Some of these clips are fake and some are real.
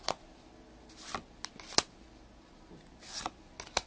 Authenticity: real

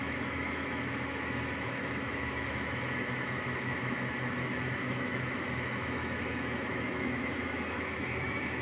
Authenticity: fake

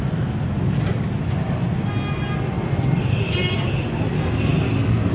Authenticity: real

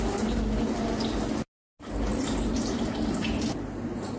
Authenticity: real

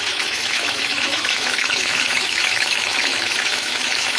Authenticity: fake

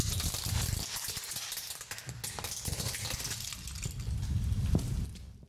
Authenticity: real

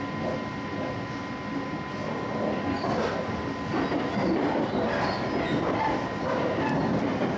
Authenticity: real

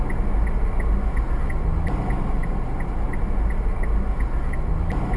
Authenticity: real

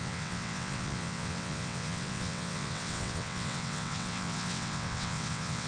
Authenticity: fake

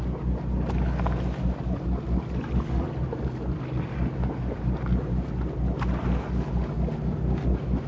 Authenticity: real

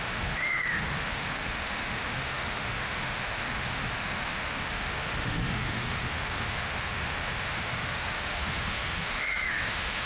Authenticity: fake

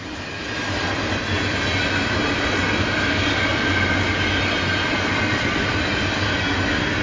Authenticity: real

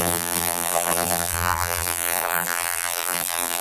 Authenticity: fake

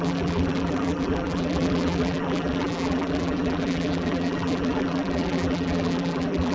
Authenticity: fake